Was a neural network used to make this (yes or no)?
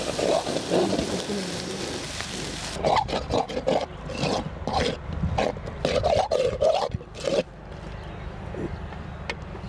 no